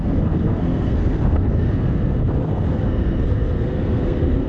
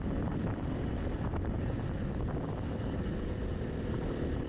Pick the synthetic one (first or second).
first